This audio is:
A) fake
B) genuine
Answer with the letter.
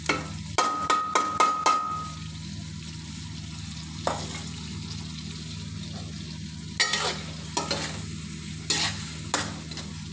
B